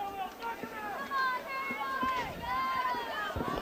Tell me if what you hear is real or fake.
real